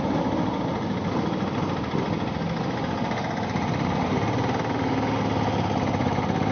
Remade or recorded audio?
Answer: recorded